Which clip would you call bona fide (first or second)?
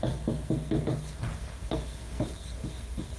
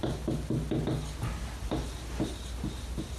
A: second